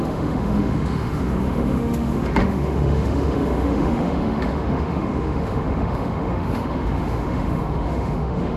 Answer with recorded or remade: remade